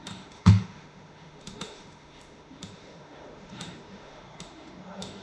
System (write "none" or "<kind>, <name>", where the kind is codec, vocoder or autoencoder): autoencoder, DAC-VAE